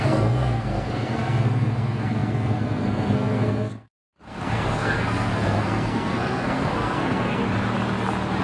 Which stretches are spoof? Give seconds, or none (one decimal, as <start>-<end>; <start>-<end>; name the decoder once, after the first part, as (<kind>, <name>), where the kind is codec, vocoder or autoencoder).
0.0-7.4 (codec, SNAC)